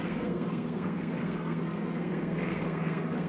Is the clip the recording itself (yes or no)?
no